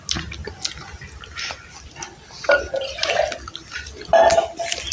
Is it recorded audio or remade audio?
recorded